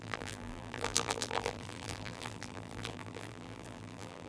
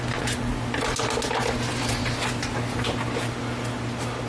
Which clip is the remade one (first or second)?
first